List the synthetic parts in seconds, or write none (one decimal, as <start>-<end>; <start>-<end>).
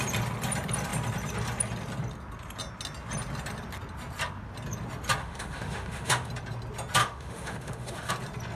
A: 5.2-6.3; 7.0-8.1